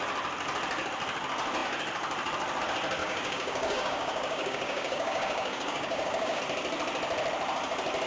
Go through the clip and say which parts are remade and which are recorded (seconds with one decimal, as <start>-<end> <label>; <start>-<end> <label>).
0.0-3.0 recorded; 3.0-6.4 remade; 6.4-8.1 recorded